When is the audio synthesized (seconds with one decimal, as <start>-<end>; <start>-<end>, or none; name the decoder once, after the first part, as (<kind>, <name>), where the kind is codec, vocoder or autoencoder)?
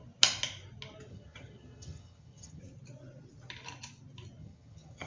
1.1-2.6 (vocoder, HiFi-GAN); 4.4-5.1